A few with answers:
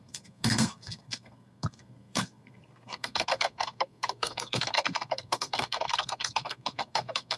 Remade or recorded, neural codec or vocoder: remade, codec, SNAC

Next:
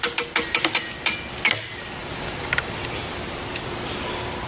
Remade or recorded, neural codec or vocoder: recorded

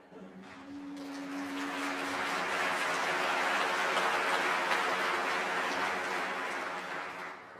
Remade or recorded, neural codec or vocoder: recorded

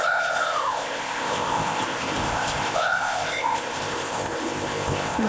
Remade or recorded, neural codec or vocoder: remade, codec, ZipCodec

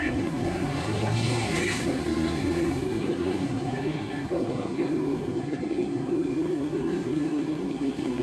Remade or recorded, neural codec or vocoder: remade, codec, SNAC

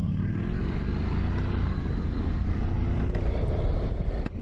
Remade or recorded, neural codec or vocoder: recorded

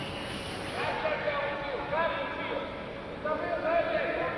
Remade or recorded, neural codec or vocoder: recorded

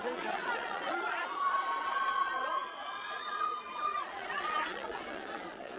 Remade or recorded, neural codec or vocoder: remade, vocoder, Vocos